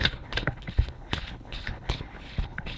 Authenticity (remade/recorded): remade